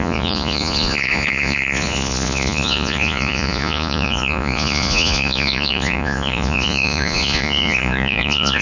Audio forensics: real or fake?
fake